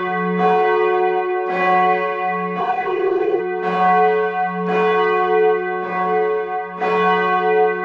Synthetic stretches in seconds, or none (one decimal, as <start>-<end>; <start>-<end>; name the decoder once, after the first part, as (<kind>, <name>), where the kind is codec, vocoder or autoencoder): 2.6-3.4 (codec, ZipCodec)